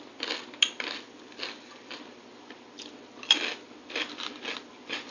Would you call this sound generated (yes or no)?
no